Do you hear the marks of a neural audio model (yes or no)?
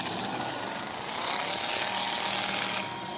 no